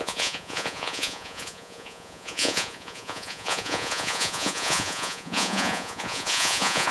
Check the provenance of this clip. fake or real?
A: fake